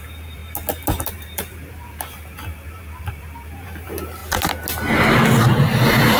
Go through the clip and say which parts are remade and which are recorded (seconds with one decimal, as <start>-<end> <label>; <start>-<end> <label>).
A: 0.0-0.4 remade; 0.4-1.1 recorded; 1.1-4.2 remade; 4.2-6.2 recorded